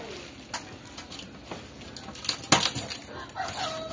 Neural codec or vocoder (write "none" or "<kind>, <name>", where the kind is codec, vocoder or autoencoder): none